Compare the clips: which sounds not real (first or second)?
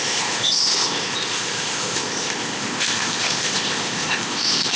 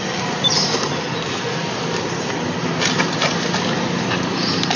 first